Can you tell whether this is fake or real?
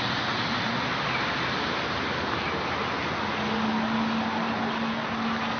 real